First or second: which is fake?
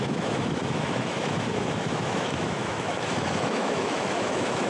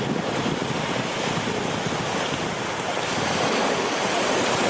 first